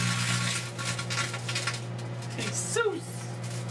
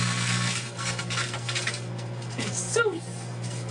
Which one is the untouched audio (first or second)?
first